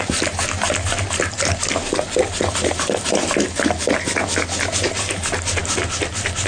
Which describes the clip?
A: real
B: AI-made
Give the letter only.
A